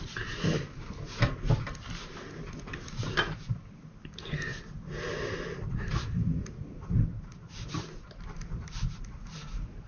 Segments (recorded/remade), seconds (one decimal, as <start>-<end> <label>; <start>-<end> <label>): 0.0-4.5 remade; 4.5-5.4 recorded; 5.4-9.9 remade